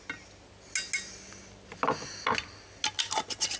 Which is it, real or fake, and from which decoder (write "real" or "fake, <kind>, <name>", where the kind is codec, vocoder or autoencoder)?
real